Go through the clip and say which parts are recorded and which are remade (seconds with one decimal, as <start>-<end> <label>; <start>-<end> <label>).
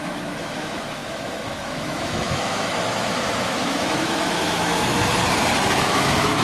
0.0-4.9 remade; 4.9-5.6 recorded; 5.6-6.4 remade